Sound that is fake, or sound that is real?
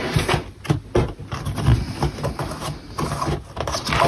real